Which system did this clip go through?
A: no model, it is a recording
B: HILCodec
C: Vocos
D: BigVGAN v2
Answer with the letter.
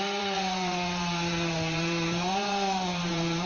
D